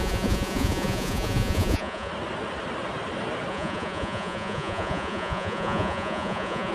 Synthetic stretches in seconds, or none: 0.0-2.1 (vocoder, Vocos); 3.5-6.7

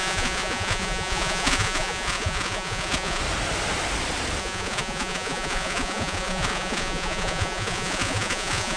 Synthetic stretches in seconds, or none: 0.0-3.2 (vocoder, Vocos); 4.4-8.8

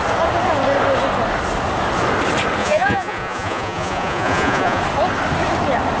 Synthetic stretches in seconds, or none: 2.6-4.8 (vocoder, Vocos)

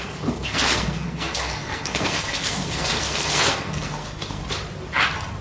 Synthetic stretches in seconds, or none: 0.0-4.4 (codec, SNAC)